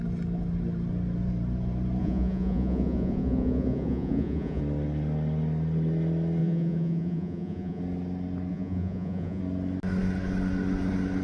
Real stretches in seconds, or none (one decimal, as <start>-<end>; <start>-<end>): 0.0-2.0; 4.6-6.4; 7.8-8.5; 9.4-11.2